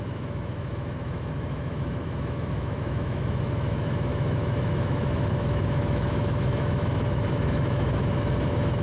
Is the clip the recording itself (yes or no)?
no